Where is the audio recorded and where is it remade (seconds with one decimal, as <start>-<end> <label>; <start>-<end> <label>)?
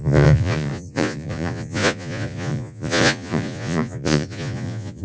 0.0-5.0 remade